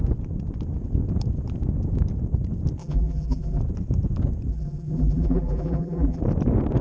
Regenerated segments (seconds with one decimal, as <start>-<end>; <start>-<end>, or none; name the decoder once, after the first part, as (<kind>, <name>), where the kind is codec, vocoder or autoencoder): 2.8-3.6 (vocoder, BigVGAN v2); 4.5-6.2